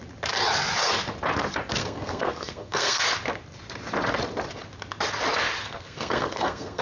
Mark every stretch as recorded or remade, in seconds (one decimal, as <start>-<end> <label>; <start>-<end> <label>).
0.0-1.8 recorded; 1.8-3.0 remade; 3.0-5.6 recorded; 5.6-6.8 remade